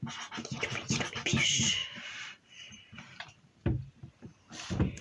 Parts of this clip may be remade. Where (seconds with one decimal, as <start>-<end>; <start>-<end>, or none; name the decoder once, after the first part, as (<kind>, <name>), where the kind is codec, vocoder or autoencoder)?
1.8-3.9 (vocoder, BigVGAN v2)